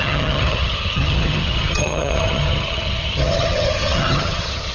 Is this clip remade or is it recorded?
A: remade